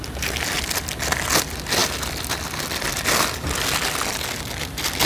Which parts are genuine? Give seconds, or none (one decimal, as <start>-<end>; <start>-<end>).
0.0-5.1